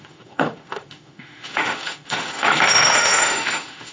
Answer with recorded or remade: remade